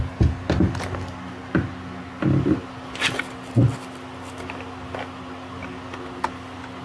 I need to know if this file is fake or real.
real